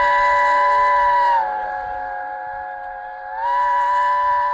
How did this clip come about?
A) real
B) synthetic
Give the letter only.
A